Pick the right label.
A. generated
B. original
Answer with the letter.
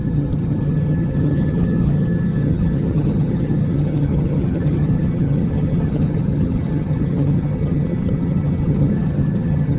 A